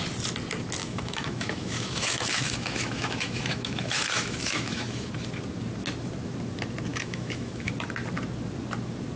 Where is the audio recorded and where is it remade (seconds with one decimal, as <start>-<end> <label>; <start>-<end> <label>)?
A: 0.0-0.8 recorded; 0.8-5.1 remade; 5.1-6.9 recorded; 6.9-7.7 remade; 7.7-9.2 recorded